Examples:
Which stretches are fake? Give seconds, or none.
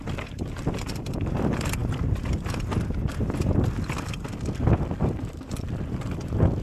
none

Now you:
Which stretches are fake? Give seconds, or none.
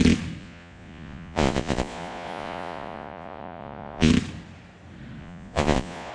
0.4-4.1 (vocoder, Vocos); 5.2-6.1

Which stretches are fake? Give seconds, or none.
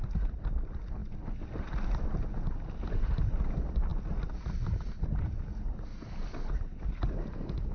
none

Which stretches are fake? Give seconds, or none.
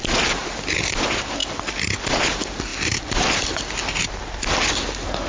none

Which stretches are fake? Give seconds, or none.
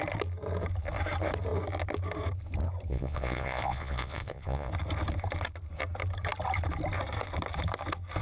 2.9-4.7 (vocoder, Vocos)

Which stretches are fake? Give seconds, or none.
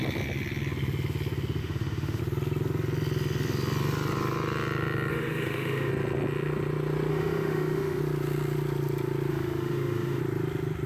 1.6-2.2 (autoencoder, DAC-VAE); 5.1-5.9; 7.1-8.0; 9.3-10.2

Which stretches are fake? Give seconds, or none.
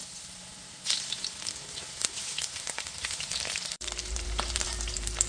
3.2-5.3 (vocoder, BigVGAN v2)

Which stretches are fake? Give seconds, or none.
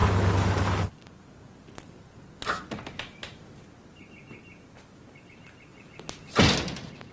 none